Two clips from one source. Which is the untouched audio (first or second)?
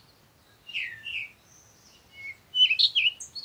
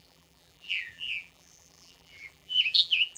first